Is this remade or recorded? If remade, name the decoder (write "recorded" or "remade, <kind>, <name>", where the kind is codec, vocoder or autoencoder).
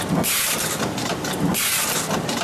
recorded